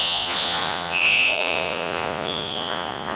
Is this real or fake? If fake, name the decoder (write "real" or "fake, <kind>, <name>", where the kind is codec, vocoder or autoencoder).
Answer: fake, vocoder, Vocos